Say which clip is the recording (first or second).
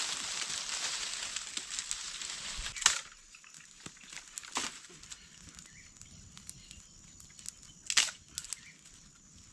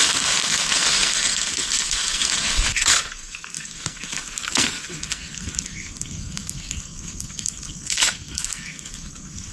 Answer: first